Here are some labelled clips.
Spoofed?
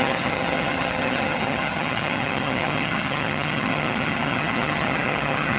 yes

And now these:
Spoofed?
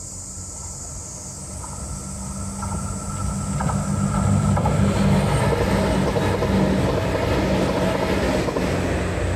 no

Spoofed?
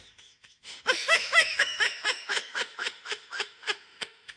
yes